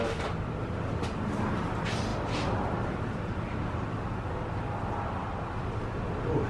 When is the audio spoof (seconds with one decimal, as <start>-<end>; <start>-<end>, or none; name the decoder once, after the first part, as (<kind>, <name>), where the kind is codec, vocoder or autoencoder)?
none